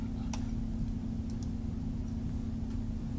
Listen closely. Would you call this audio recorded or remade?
recorded